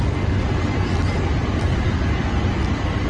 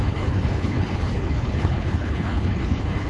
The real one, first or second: first